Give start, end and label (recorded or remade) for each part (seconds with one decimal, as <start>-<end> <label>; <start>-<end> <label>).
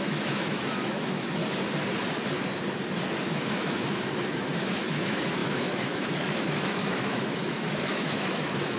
0.0-1.4 remade; 1.4-3.1 recorded; 3.1-8.8 remade